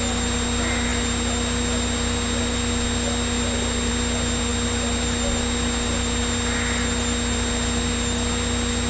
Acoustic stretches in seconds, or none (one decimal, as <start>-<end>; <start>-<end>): 0.0-8.9